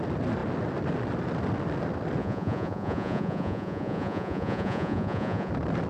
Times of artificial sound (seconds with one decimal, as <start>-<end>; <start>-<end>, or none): 2.2-5.5